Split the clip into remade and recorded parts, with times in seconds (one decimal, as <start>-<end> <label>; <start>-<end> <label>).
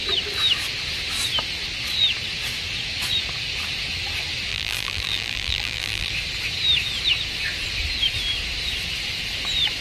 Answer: 0.0-4.5 recorded; 4.5-6.1 remade; 6.1-9.8 recorded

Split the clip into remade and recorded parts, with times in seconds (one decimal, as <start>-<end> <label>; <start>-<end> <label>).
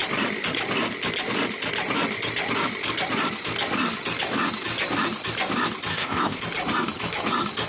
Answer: 0.0-5.9 recorded; 5.9-6.4 remade; 6.4-7.7 recorded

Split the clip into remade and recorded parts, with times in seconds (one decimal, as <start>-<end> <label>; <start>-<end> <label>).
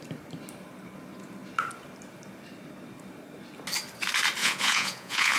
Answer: 0.0-4.4 recorded; 4.4-5.4 remade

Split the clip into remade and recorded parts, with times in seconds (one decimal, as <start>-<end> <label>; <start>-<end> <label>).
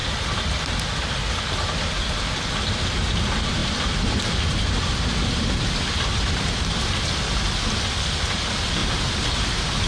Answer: 0.0-9.9 recorded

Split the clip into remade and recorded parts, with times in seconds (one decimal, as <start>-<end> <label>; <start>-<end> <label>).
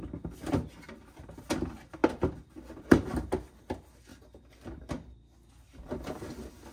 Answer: 0.0-4.1 recorded; 4.1-4.8 remade; 4.8-6.7 recorded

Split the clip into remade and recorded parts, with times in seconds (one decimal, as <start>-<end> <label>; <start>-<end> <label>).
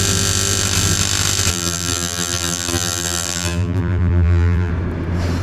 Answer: 0.0-1.5 recorded; 1.5-4.7 remade; 4.7-5.4 recorded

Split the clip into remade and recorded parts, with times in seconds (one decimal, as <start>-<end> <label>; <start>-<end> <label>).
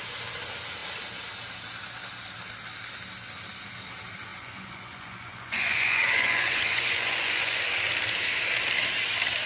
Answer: 0.0-4.3 recorded; 4.3-7.6 remade; 7.6-9.5 recorded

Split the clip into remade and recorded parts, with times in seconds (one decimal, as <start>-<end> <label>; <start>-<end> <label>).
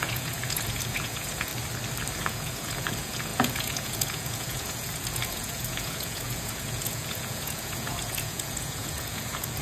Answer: 0.0-1.5 remade; 1.5-2.2 recorded; 2.2-9.6 remade